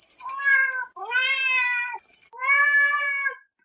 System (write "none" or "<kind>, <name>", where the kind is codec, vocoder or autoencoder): vocoder, BigVGAN v2